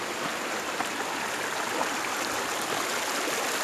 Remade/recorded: recorded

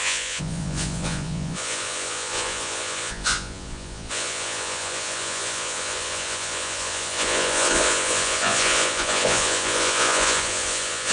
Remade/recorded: remade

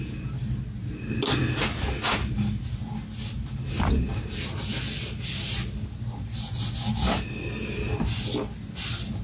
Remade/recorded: recorded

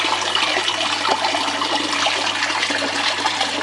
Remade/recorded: recorded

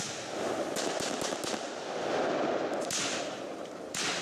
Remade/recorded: recorded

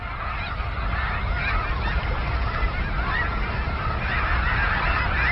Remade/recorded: recorded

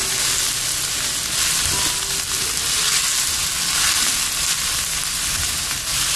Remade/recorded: recorded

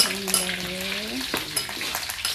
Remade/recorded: recorded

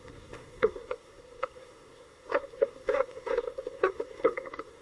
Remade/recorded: remade